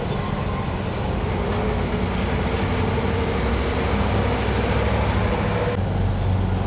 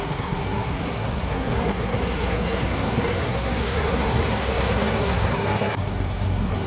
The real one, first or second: first